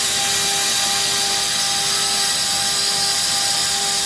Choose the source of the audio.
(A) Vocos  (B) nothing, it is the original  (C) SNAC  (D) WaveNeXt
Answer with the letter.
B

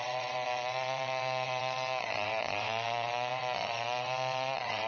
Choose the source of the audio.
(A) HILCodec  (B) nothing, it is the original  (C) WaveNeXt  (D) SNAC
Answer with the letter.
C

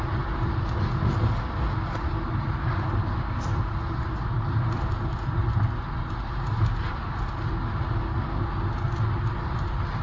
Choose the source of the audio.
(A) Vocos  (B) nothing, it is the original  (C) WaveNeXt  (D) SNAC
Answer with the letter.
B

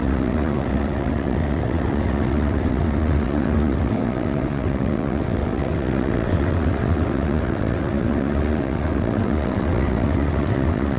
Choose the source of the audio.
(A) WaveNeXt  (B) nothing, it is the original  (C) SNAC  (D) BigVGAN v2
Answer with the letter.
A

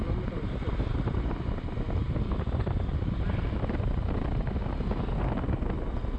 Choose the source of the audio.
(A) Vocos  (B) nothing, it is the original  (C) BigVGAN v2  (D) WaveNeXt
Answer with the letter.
B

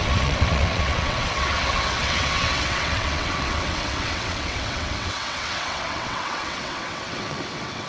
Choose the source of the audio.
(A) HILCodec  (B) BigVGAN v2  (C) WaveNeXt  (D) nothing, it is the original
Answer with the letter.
C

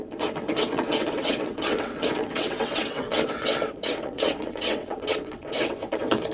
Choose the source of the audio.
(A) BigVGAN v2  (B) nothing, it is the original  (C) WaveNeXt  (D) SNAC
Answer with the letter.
C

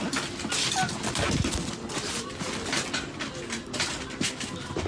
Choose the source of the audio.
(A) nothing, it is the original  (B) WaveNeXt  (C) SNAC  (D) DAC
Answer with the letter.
A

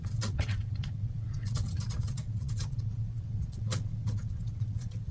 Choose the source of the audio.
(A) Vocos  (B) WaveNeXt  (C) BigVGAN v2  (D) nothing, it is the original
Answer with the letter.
B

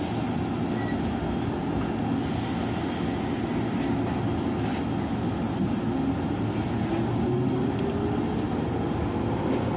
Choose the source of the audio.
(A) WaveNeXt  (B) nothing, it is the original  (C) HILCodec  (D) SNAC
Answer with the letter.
B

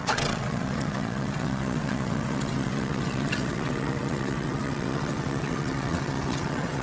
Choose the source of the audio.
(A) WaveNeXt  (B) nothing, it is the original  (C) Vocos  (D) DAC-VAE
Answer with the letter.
A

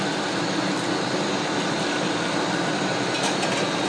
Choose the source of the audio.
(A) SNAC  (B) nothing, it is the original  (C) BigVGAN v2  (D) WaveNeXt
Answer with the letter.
B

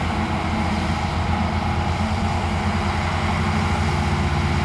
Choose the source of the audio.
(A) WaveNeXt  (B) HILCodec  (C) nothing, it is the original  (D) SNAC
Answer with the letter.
C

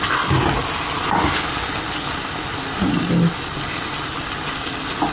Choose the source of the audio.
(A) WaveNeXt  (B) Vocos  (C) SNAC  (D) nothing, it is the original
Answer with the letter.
D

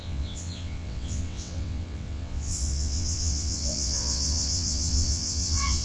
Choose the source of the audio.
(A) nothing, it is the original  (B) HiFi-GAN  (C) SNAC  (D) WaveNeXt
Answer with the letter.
D